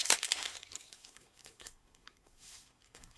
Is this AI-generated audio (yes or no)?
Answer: yes